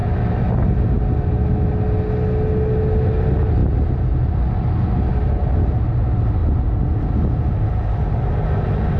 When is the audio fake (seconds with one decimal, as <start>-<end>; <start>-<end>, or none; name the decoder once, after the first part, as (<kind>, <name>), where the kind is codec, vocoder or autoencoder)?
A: 0.0-0.5 (autoencoder, DAC-VAE)